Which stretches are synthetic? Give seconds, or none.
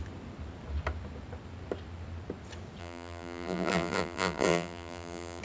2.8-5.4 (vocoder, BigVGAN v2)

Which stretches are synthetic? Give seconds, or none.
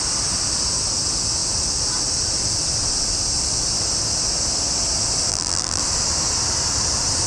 5.3-5.8 (vocoder, BigVGAN v2)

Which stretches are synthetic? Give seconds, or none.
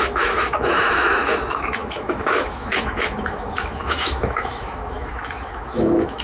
0.0-6.2 (autoencoder, DAC-VAE)